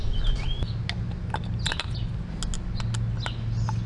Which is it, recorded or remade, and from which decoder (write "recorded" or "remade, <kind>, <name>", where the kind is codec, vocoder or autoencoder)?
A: recorded